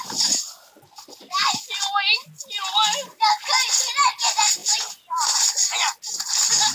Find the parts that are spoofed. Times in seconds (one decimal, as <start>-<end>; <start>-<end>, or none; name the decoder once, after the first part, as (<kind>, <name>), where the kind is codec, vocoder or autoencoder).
none